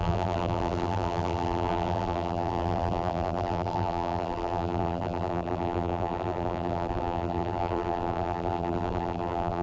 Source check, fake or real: fake